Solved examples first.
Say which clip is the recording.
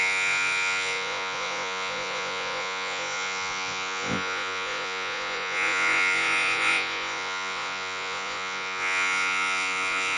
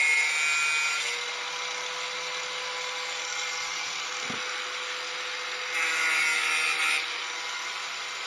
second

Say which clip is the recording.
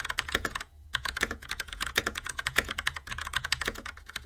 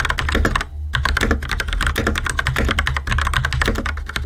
second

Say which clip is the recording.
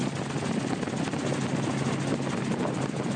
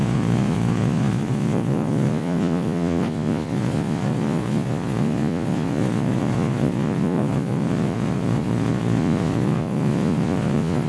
first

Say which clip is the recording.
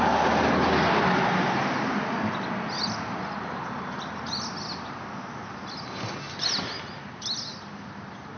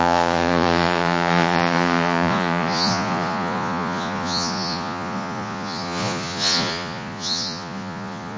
first